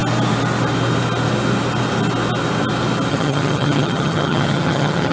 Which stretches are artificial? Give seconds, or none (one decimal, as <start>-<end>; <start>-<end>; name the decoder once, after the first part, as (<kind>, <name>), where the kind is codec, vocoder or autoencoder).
3.1-5.1 (vocoder, HiFi-GAN)